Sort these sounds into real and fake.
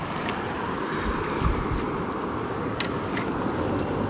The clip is real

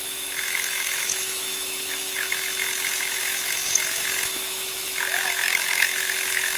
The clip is fake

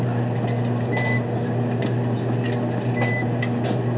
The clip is real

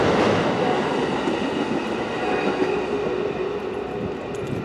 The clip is real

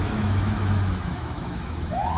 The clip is fake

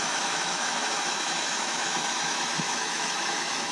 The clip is fake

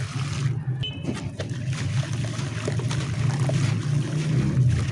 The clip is real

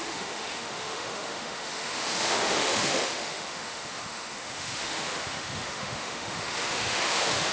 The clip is fake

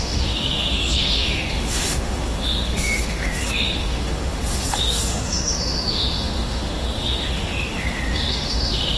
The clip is fake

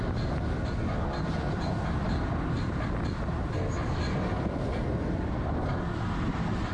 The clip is real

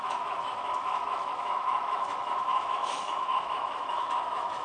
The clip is fake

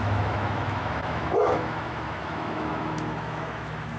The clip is fake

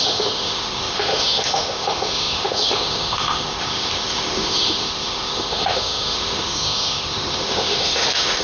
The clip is fake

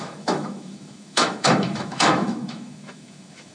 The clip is fake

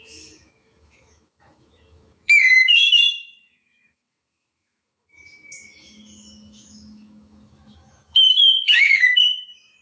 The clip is fake